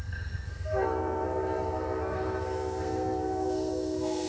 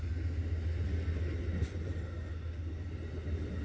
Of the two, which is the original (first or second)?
second